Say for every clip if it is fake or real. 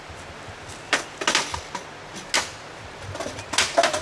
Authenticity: real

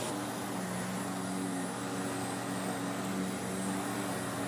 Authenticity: real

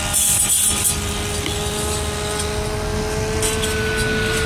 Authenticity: real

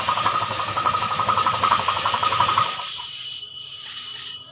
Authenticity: fake